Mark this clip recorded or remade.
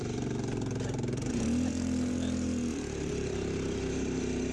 remade